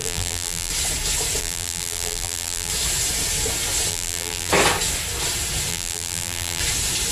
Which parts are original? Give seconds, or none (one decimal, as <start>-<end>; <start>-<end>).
0.7-1.4; 2.7-3.9; 4.5-5.7; 6.6-7.1